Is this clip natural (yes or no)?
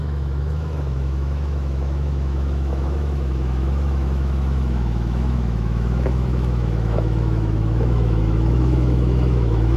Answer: no